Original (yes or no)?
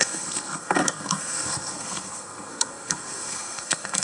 no